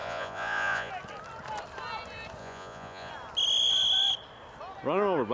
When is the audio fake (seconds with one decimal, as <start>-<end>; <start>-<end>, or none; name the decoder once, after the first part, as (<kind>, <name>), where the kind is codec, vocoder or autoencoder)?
0.0-0.9 (vocoder, Vocos); 2.4-3.1